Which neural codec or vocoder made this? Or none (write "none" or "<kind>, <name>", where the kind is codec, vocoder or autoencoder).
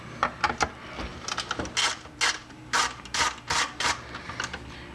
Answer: none